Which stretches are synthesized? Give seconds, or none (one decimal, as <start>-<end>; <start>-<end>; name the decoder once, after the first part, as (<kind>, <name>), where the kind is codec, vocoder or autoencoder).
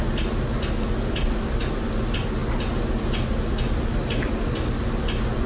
none